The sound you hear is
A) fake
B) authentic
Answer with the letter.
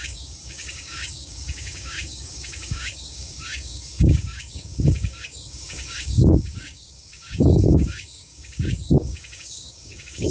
A